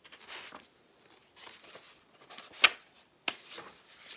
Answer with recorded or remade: recorded